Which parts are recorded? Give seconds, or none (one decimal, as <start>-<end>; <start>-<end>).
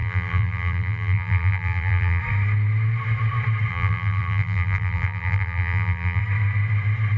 2.2-3.7; 6.2-7.2